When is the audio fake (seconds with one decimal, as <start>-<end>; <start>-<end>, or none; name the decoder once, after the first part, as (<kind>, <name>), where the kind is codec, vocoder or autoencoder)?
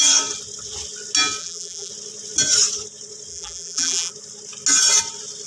1.4-1.9 (vocoder, BigVGAN v2); 3.3-4.1